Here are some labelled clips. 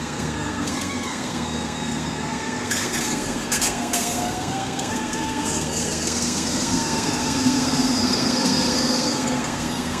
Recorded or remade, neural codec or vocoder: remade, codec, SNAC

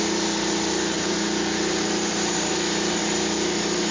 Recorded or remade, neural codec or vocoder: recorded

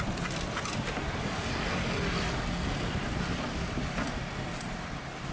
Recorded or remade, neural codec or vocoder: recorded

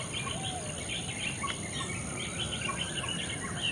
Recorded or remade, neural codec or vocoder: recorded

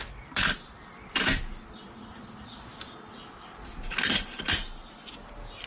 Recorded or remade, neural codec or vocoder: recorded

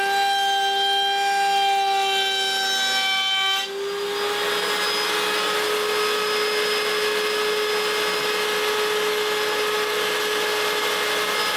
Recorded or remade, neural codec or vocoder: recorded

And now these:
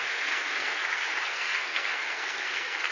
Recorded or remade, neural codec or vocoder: remade, codec, SNAC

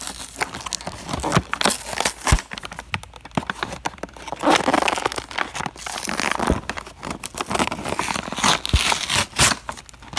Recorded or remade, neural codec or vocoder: recorded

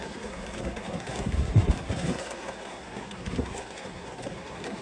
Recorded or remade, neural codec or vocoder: remade, codec, SNAC